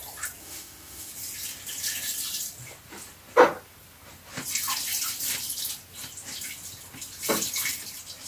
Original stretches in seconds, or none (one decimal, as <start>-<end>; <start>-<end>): 0.0-0.4; 1.1-8.3